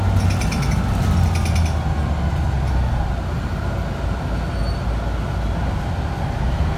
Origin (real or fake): real